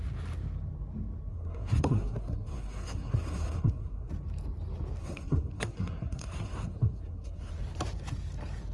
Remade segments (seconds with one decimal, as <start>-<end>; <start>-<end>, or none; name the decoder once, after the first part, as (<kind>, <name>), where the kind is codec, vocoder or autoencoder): 1.3-4.1 (codec, SNAC); 5.0-7.5